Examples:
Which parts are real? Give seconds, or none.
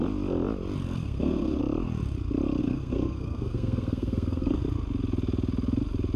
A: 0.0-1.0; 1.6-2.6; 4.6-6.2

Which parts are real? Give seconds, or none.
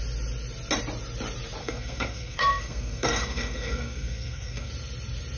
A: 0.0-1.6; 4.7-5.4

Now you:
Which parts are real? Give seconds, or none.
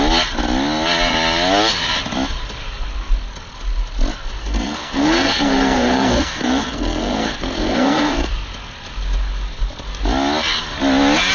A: 0.0-4.4; 8.3-11.3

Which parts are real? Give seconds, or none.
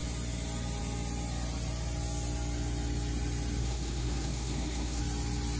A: 0.0-3.6; 5.0-5.6